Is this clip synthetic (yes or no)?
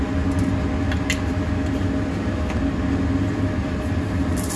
no